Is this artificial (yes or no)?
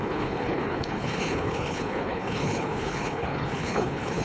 yes